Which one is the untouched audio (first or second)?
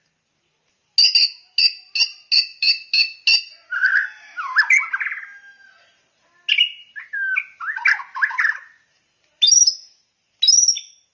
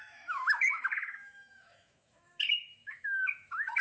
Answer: first